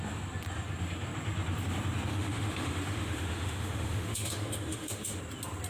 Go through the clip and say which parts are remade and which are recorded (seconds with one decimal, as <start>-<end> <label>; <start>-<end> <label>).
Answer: 0.0-2.1 recorded; 2.1-5.2 remade; 5.2-5.7 recorded

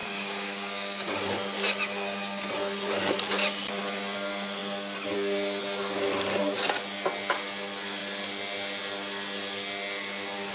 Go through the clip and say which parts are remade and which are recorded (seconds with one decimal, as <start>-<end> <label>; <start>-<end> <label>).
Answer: 0.0-1.1 remade; 1.1-10.5 recorded

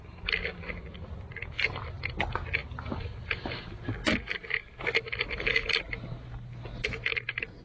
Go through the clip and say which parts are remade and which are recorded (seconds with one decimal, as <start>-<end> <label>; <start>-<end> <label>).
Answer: 0.0-7.6 recorded

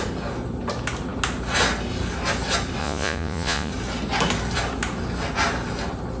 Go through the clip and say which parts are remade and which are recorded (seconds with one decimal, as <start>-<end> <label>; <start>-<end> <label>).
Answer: 0.0-2.8 recorded; 2.8-3.7 remade; 3.7-6.2 recorded

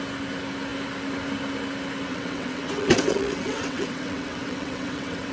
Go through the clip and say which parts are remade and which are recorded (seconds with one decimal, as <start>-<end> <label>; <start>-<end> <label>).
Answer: 0.0-2.1 recorded; 2.1-5.3 remade